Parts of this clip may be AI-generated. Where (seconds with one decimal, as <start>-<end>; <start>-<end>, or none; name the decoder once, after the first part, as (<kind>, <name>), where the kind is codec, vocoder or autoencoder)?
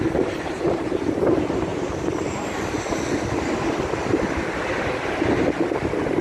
0.0-1.7 (vocoder, BigVGAN v2); 4.8-6.2